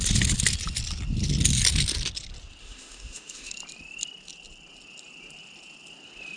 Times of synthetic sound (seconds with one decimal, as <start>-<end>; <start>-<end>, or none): 2.6-3.5